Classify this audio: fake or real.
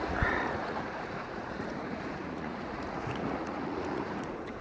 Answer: fake